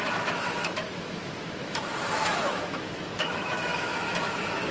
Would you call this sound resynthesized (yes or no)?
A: yes